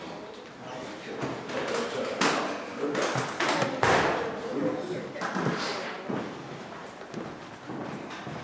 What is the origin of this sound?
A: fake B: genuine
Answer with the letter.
B